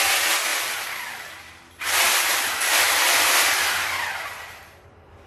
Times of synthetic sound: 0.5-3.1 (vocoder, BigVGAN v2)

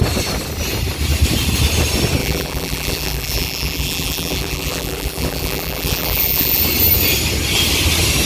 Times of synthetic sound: 2.2-6.6 (vocoder, BigVGAN v2)

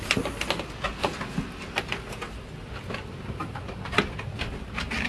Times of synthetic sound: none

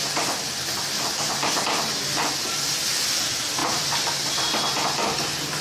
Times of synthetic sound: none

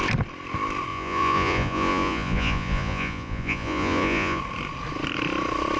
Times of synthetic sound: 0.9-4.4 (vocoder, Vocos)